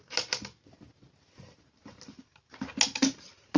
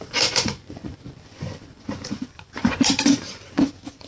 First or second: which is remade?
second